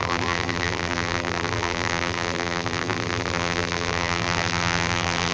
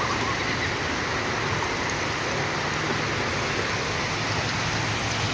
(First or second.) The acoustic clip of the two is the second